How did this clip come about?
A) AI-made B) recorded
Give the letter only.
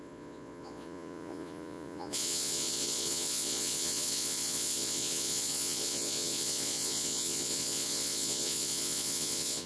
A